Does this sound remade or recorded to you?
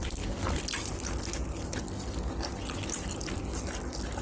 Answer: recorded